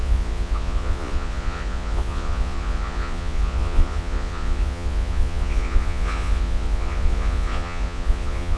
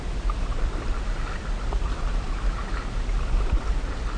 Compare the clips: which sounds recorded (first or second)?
second